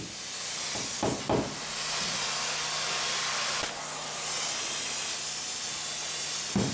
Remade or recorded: recorded